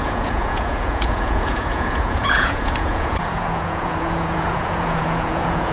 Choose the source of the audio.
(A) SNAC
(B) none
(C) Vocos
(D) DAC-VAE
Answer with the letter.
C